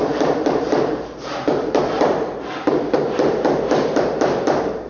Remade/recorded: remade